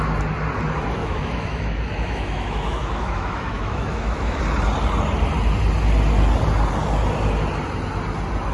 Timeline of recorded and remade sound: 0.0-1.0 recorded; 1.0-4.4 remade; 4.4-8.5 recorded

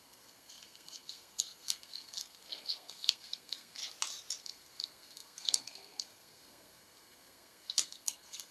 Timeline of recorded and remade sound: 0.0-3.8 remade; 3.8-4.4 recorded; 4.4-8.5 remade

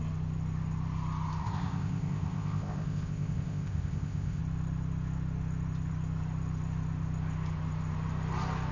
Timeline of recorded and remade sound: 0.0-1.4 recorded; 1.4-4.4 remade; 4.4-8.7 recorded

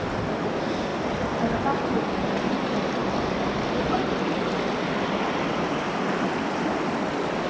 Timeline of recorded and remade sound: 0.0-7.5 recorded

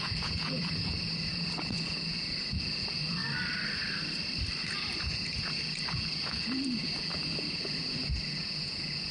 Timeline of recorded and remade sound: 0.0-3.2 remade; 3.2-4.6 recorded; 4.6-9.1 remade